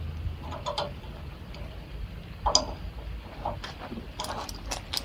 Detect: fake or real real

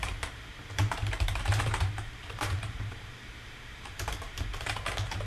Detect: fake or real fake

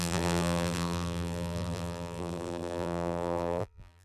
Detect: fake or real fake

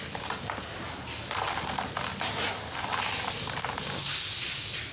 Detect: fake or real real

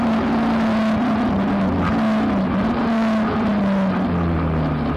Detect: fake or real real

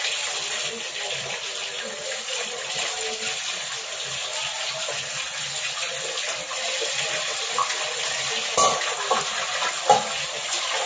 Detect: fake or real real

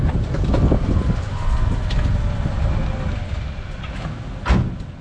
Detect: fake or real real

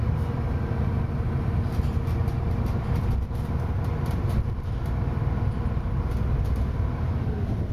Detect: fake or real real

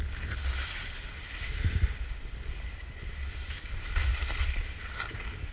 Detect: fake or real real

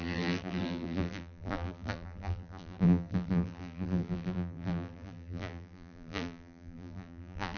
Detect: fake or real fake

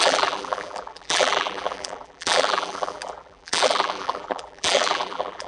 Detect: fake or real fake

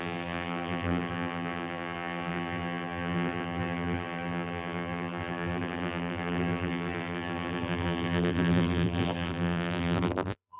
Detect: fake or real fake